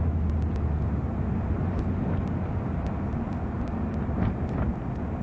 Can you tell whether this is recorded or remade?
recorded